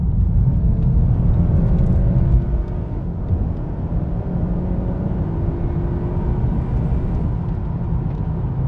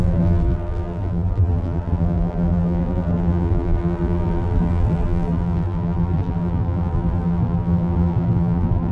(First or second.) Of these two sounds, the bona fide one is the first